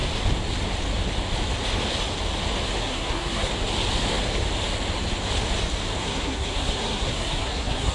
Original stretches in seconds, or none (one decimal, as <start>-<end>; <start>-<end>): 0.0-2.8; 3.5-6.0